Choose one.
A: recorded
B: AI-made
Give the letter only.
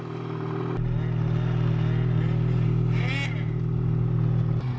A